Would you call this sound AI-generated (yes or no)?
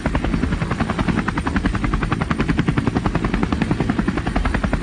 no